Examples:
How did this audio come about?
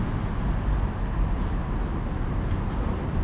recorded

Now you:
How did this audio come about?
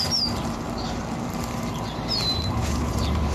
remade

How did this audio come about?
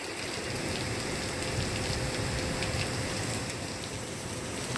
remade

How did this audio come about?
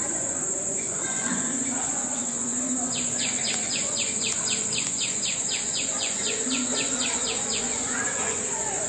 remade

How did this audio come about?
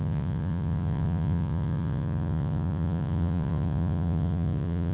remade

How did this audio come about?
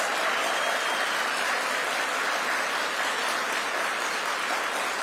recorded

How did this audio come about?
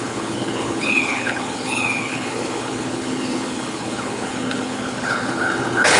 remade